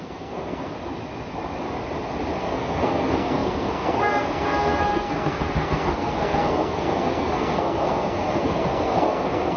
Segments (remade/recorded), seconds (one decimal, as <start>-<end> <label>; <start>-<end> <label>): 0.0-0.7 remade; 0.7-2.4 recorded; 2.4-9.6 remade